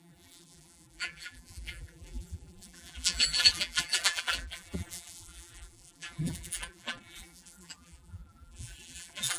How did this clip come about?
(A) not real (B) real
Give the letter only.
A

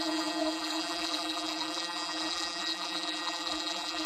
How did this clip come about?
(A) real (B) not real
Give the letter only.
B